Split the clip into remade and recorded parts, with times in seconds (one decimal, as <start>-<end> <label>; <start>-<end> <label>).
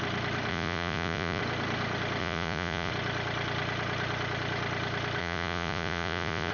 0.0-0.5 recorded; 0.5-1.4 remade; 1.4-2.2 recorded; 2.2-2.9 remade; 2.9-5.2 recorded; 5.2-6.5 remade